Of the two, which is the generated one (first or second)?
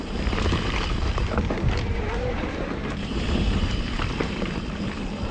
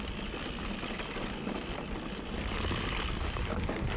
first